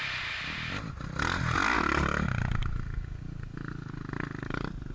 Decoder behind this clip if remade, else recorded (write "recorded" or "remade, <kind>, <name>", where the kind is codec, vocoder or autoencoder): recorded